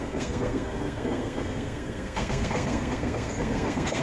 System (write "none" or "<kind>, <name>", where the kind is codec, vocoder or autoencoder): codec, SNAC